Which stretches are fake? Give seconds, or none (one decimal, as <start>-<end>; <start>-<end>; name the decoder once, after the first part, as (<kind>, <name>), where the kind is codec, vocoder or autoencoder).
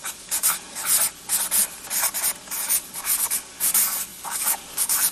0.0-0.8 (codec, DAC); 2.4-5.1